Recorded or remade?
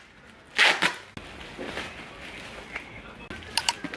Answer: recorded